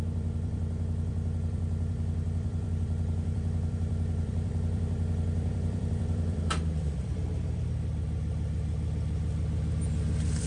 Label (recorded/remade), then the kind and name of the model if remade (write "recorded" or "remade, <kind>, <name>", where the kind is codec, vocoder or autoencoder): remade, vocoder, BigVGAN v2